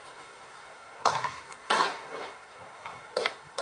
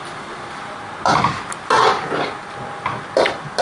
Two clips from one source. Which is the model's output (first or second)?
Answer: first